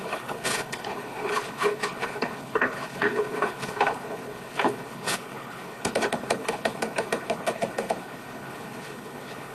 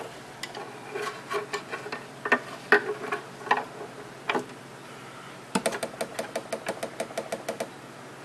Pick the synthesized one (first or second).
first